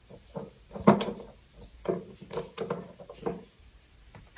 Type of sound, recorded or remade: recorded